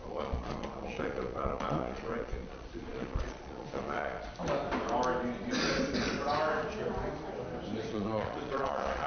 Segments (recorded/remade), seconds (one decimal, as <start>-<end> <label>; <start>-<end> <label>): 0.0-4.3 remade; 4.3-7.9 recorded; 7.9-9.1 remade